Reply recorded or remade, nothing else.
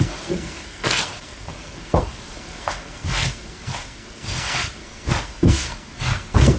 remade